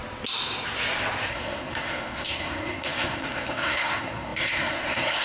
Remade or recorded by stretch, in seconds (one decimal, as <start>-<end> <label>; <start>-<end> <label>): 0.0-1.3 recorded; 1.3-5.2 remade

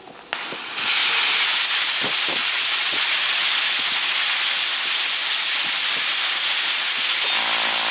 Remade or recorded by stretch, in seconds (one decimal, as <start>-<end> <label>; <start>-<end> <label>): 0.0-1.0 recorded; 1.0-1.8 remade; 1.8-2.4 recorded; 2.4-3.5 remade; 3.5-5.2 recorded; 5.2-5.8 remade; 5.8-7.9 recorded

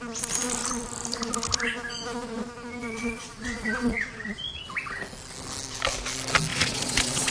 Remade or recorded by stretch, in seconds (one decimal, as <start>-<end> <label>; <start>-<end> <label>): 0.0-2.8 recorded; 2.8-4.6 remade; 4.6-6.5 recorded; 6.5-7.3 remade

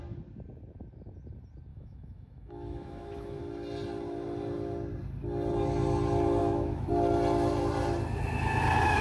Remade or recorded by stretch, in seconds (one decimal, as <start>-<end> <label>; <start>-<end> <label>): 0.0-1.7 recorded; 1.7-3.4 remade; 3.4-6.4 recorded; 6.4-6.9 remade; 6.9-9.0 recorded

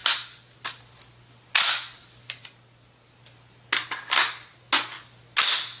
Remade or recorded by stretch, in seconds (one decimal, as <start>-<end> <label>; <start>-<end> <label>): 0.0-5.8 recorded

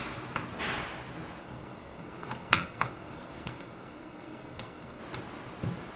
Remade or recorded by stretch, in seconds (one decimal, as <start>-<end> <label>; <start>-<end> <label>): 0.0-1.4 recorded; 1.4-5.0 remade; 5.0-6.0 recorded

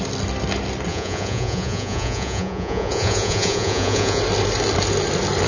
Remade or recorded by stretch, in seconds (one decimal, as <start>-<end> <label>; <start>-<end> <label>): 0.0-0.9 recorded; 0.9-4.2 remade; 4.2-5.5 recorded

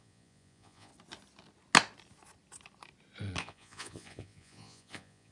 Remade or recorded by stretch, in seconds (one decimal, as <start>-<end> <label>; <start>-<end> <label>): 0.0-0.9 remade; 0.9-3.4 recorded; 3.4-5.3 remade